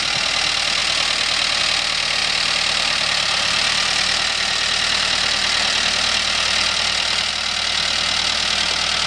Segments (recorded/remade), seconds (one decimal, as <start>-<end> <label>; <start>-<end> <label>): 0.0-2.2 recorded; 2.2-7.3 remade; 7.3-9.1 recorded